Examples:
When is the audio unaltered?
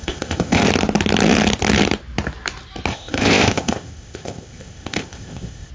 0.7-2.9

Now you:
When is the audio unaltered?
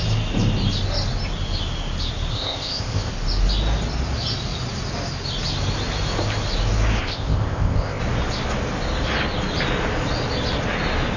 0.0-2.3; 3.1-7.0; 8.0-11.2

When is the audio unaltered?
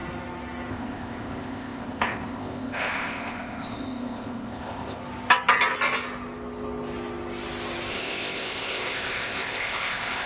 0.0-0.7; 5.0-7.9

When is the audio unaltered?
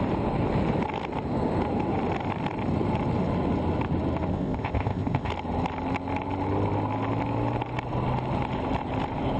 0.0-4.3; 5.3-9.4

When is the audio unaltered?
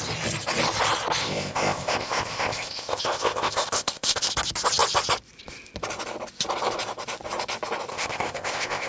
0.0-1.2; 4.3-7.9